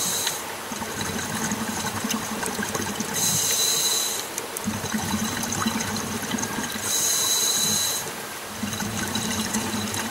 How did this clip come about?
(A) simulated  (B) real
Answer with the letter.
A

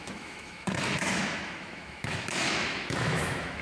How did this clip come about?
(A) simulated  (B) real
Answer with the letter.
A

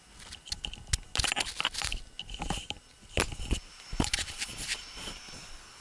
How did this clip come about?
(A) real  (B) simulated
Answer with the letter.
A